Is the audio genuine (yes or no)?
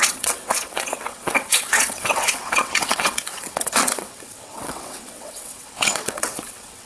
no